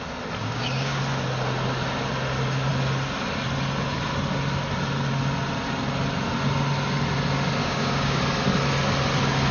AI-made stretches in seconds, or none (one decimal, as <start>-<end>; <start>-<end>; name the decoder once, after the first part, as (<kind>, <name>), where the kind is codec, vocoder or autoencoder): 0.4-1.0 (codec, DAC); 7.6-8.2